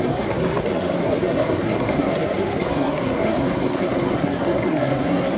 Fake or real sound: fake